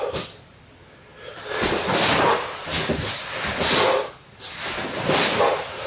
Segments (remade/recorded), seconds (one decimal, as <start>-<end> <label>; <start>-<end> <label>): 0.0-5.9 recorded